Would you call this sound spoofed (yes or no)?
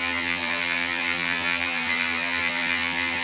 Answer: yes